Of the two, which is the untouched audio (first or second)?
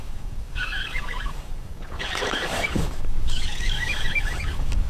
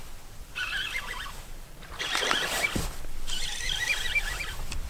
second